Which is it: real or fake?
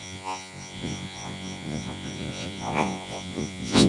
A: fake